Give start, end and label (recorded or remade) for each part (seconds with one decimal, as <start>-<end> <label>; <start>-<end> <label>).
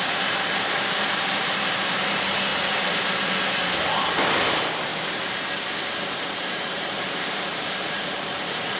0.0-2.5 remade; 2.5-4.5 recorded; 4.5-4.9 remade; 4.9-6.0 recorded; 6.0-8.8 remade